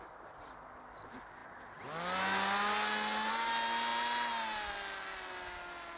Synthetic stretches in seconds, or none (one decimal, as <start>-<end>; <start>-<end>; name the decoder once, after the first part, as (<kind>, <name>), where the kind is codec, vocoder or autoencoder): none

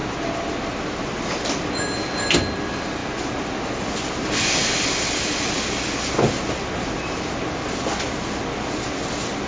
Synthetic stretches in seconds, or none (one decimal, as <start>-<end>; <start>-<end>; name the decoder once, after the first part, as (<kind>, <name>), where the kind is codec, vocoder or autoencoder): none

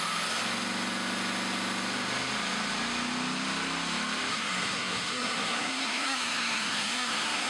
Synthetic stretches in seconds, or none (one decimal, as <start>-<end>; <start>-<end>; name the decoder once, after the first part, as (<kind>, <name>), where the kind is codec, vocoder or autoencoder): 4.3-7.5 (codec, SNAC)

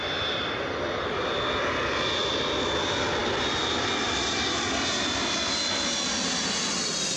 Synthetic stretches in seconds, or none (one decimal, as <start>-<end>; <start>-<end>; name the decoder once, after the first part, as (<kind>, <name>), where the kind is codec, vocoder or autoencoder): 2.2-2.7 (vocoder, BigVGAN v2)

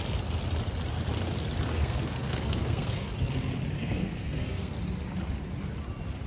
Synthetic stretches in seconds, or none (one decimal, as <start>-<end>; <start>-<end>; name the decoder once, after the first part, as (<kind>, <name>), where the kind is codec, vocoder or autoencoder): 1.7-3.1 (codec, SNAC); 3.8-4.7

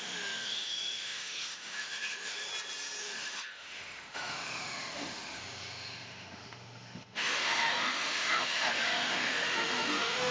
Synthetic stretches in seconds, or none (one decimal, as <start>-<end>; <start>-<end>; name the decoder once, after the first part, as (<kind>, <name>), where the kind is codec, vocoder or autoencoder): 0.0-2.5 (autoencoder, DAC-VAE); 3.0-10.3

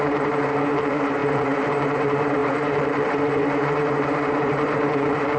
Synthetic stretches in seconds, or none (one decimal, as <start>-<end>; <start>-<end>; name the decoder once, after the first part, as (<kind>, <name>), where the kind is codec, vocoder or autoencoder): 0.0-5.4 (vocoder, BigVGAN v2)

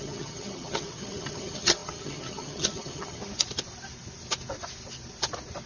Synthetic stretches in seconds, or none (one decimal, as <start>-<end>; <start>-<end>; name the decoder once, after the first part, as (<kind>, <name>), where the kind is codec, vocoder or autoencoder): 0.0-3.2 (vocoder, HiFi-GAN)